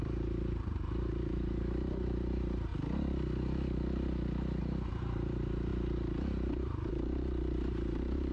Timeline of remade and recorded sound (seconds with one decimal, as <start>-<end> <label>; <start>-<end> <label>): 0.0-2.7 remade; 2.7-4.6 recorded; 4.6-8.3 remade